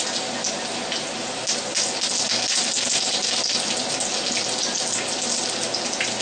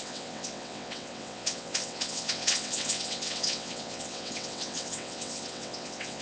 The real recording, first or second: first